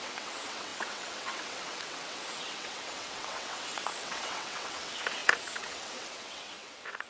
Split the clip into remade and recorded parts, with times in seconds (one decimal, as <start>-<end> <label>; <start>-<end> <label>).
0.0-7.1 remade